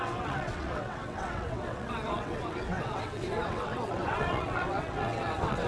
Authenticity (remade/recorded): remade